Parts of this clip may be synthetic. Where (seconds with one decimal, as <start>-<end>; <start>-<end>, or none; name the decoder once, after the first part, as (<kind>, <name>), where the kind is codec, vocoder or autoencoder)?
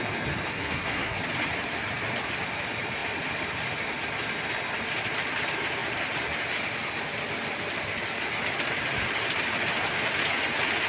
0.5-1.2 (codec, SNAC)